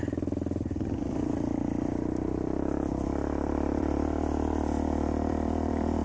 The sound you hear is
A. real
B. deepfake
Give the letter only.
B